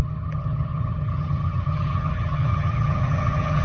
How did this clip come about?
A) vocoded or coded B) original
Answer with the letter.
A